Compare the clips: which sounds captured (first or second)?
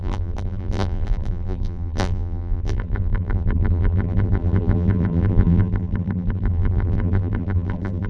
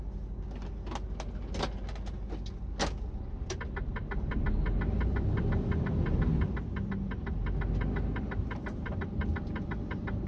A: second